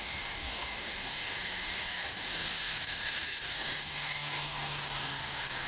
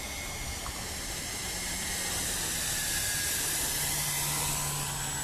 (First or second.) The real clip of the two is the second